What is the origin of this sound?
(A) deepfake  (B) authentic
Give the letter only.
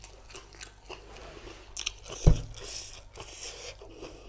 B